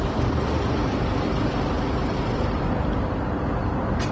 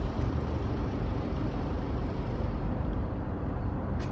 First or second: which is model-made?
second